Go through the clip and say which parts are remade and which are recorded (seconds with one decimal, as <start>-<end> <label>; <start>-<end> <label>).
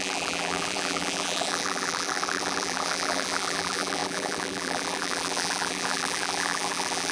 0.0-7.1 remade